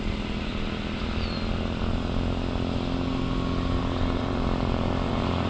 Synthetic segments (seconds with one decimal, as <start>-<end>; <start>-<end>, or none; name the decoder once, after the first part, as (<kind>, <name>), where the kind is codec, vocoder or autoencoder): 0.0-0.5 (vocoder, BigVGAN v2); 3.8-5.5